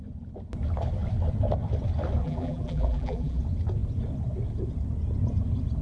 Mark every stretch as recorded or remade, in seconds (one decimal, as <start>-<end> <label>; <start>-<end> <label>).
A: 0.0-2.2 recorded; 2.2-3.4 remade; 3.4-5.8 recorded